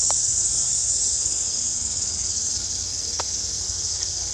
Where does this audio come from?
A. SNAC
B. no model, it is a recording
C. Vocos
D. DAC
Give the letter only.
A